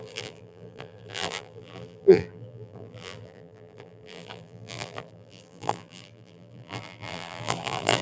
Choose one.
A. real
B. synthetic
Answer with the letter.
B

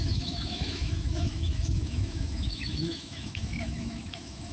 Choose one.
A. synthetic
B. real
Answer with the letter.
A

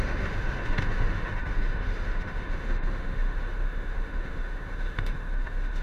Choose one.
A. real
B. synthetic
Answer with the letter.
B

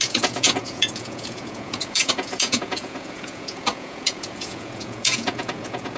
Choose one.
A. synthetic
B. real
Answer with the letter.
A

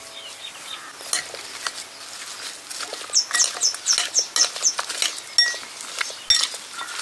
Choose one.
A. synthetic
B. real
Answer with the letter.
B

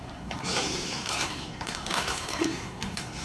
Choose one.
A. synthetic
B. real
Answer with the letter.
A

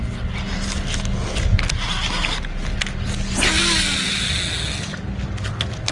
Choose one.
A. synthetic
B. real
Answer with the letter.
B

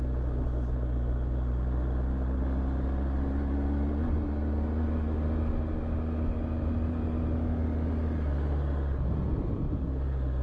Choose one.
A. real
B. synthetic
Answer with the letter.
A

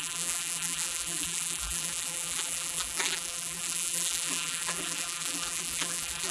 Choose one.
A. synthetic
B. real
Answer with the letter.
A